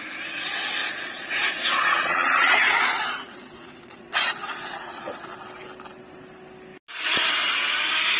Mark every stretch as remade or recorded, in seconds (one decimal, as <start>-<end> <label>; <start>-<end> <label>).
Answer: 0.0-0.8 recorded; 0.8-5.3 remade; 5.3-8.2 recorded